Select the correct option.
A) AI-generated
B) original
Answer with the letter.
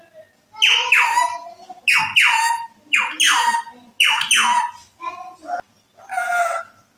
B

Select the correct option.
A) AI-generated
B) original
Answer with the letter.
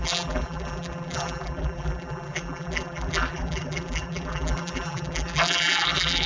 A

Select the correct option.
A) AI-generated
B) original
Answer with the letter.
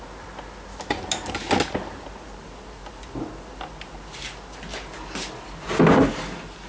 B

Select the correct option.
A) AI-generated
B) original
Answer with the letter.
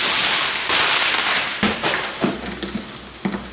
B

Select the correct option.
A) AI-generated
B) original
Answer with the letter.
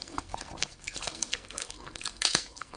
A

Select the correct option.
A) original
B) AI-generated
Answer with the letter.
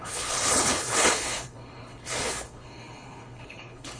B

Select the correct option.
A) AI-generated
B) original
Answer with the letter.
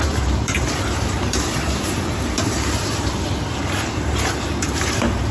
A